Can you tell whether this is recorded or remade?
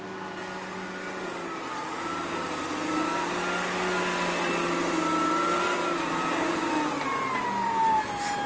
recorded